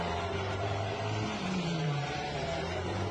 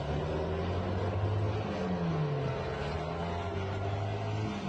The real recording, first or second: second